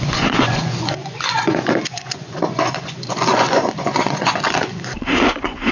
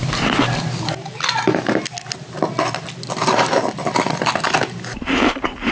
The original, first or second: second